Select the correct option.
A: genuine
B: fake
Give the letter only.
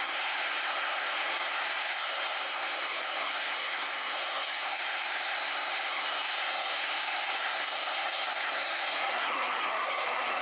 B